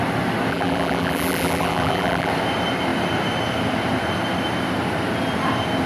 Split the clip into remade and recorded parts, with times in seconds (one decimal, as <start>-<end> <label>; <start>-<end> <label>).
0.0-0.5 recorded; 0.5-2.3 remade; 2.3-5.9 recorded